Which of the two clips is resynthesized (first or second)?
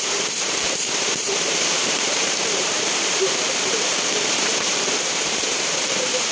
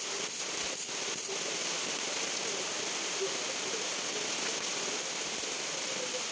first